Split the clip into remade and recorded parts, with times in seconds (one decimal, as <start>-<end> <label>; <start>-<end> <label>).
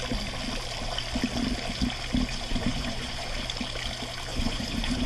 0.0-2.3 recorded; 2.3-3.3 remade; 3.3-4.3 recorded; 4.3-5.1 remade